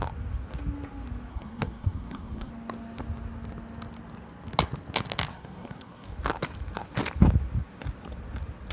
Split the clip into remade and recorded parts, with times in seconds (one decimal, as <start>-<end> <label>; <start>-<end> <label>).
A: 0.0-1.3 recorded; 1.3-2.5 remade; 2.5-5.3 recorded; 5.3-6.1 remade; 6.1-8.7 recorded